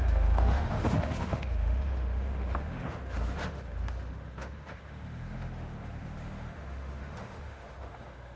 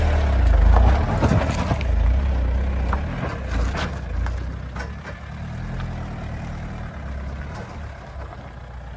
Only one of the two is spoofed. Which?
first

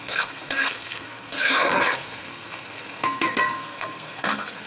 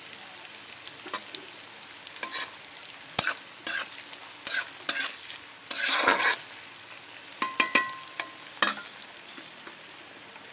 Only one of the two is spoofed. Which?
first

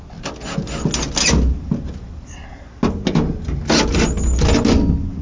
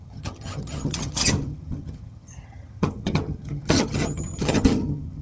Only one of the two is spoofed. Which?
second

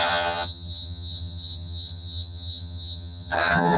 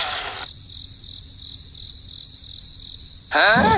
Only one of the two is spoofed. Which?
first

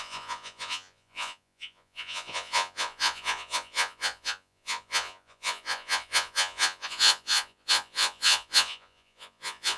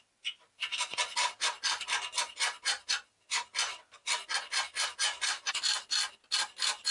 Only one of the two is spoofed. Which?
first